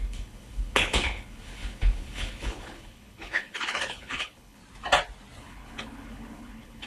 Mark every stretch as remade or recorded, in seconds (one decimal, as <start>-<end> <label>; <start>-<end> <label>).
0.0-4.6 remade; 4.6-5.4 recorded; 5.4-6.9 remade